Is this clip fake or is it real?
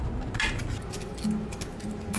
real